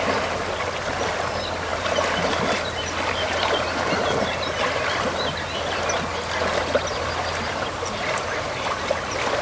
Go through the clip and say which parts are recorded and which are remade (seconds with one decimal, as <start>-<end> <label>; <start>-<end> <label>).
0.0-9.4 recorded